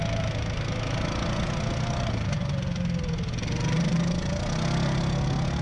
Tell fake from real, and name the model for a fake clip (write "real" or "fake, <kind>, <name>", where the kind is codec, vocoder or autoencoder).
real